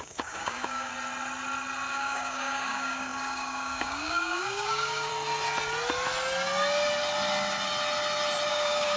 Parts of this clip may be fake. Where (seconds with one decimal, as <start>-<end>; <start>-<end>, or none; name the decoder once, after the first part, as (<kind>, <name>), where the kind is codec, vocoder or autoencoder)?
0.0-0.9 (codec, DAC); 1.9-5.1; 8.5-9.0